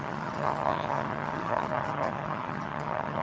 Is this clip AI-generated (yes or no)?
yes